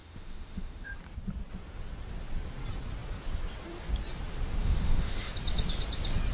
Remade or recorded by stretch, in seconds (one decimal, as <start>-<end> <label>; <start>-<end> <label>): 0.0-0.9 remade; 0.9-4.6 recorded; 4.6-5.3 remade; 5.3-6.3 recorded